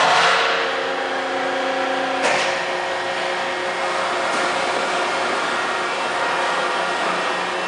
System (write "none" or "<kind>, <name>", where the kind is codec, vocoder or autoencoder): none